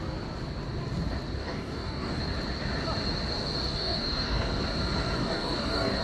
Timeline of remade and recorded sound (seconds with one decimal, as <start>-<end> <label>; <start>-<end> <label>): 0.0-1.4 recorded; 1.4-2.2 remade; 2.2-3.7 recorded; 3.7-4.6 remade; 4.6-5.2 recorded; 5.2-6.0 remade